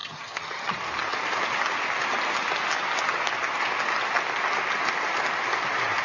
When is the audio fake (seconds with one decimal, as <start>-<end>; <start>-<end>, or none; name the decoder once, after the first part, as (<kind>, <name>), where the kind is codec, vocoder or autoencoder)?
0.0-0.7 (vocoder, HiFi-GAN)